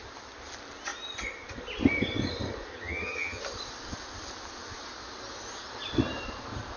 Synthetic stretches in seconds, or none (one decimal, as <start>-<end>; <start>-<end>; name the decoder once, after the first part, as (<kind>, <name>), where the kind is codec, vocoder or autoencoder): 2.7-3.4 (vocoder, HiFi-GAN)